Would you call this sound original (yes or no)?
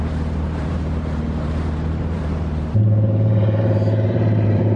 no